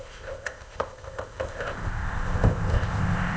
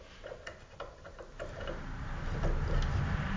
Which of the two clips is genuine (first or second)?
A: second